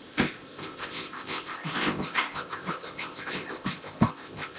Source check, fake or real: fake